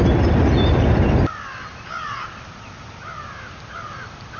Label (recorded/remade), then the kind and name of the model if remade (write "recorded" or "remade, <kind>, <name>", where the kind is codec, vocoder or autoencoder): recorded